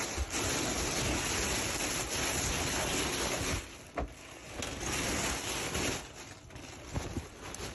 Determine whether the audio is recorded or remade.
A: recorded